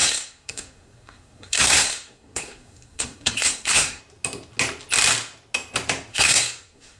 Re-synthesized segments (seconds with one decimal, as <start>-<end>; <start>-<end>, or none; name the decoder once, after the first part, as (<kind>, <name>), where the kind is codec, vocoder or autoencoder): 0.0-4.0 (codec, SNAC); 6.1-7.0